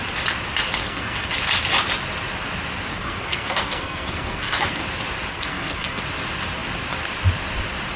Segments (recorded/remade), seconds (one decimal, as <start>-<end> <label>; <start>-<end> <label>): 0.0-0.8 recorded; 0.8-1.3 remade; 1.3-2.9 recorded; 2.9-4.8 remade; 4.8-5.3 recorded; 5.3-6.0 remade; 6.0-8.0 recorded